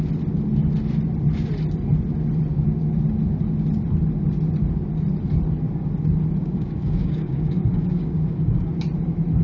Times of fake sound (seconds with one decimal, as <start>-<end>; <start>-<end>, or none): 6.4-8.7